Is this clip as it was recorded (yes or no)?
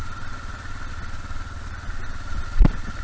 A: yes